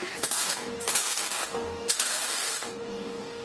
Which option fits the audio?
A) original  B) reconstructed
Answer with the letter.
B